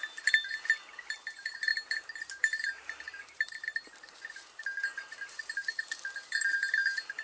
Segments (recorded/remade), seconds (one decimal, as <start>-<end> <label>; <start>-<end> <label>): 0.0-7.2 remade